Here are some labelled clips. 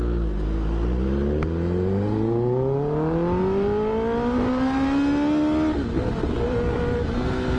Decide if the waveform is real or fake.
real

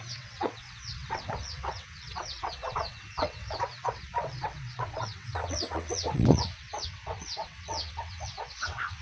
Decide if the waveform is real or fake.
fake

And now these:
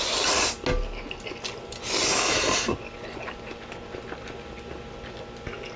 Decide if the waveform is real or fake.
real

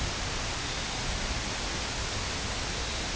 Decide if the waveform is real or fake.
real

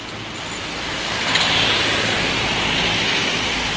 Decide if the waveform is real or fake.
real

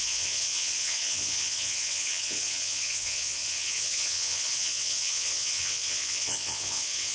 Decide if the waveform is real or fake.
fake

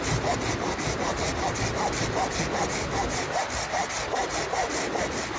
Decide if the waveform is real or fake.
real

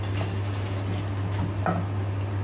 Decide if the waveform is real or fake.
real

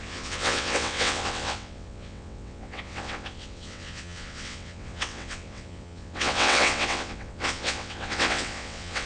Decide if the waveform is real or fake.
fake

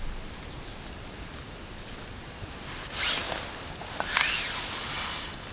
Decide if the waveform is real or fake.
real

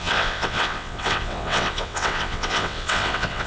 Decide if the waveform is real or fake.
fake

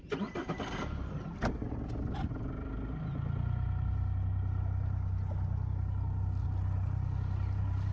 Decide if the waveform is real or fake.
real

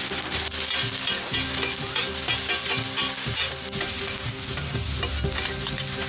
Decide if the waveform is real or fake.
real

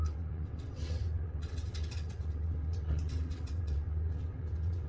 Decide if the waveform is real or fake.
fake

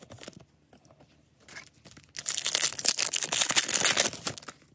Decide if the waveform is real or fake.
real